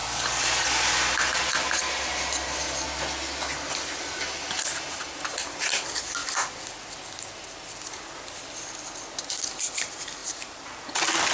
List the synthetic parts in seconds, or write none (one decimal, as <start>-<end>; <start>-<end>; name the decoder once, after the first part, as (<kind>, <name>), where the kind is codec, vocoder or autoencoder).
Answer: 10.2-10.7 (vocoder, BigVGAN v2)